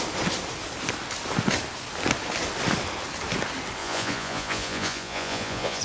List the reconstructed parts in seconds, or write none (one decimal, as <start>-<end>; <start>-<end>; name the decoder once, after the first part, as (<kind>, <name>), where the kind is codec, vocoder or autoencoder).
3.8-5.8 (vocoder, Vocos)